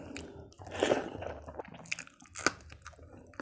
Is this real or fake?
real